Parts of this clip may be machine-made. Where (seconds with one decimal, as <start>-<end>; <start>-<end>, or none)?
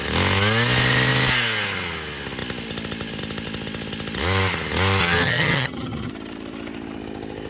5.0-6.1